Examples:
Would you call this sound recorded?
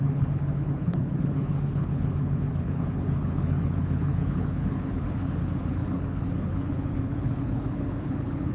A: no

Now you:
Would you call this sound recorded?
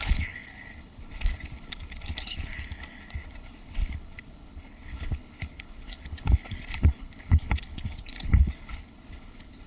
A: no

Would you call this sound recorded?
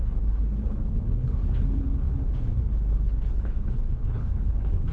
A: no